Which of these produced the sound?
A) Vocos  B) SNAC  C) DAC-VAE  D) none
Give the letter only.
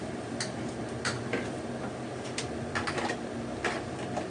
D